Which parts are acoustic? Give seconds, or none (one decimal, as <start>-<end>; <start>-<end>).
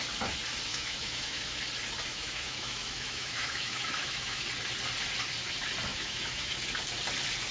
0.0-0.7; 1.6-2.1; 4.4-5.9; 6.6-7.5